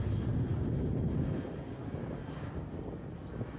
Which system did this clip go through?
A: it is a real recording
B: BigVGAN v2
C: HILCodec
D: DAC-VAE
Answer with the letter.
A